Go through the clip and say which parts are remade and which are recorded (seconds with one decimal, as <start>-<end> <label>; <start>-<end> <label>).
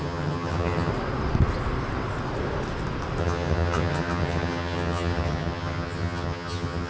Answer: 0.0-0.9 remade; 0.9-3.2 recorded; 3.2-6.9 remade